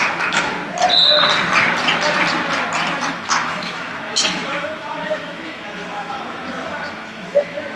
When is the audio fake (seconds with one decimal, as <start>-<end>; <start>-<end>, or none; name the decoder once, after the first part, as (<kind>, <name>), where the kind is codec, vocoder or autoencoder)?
0.0-0.6 (autoencoder, DAC-VAE); 3.1-7.8